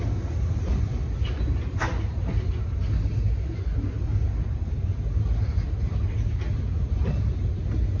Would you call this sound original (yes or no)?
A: yes